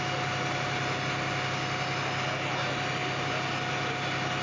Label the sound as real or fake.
real